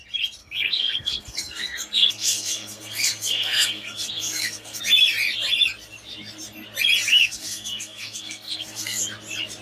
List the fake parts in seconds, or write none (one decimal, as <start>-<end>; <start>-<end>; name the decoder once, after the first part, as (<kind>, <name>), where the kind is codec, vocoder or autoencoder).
0.4-4.8 (codec, SNAC); 7.1-9.0